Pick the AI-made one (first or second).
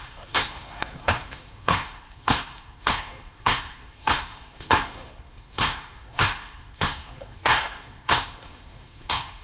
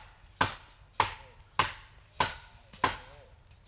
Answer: first